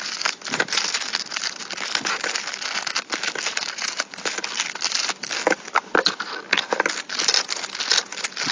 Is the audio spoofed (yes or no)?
no